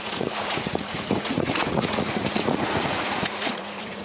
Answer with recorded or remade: remade